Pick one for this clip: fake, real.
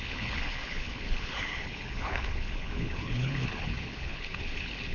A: fake